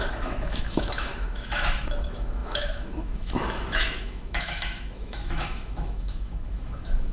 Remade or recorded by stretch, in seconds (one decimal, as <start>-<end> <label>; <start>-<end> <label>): 0.0-7.1 remade